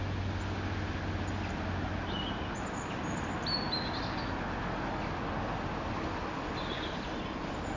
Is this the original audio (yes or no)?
yes